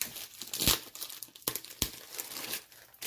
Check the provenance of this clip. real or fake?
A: real